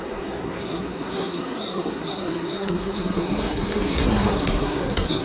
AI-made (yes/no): yes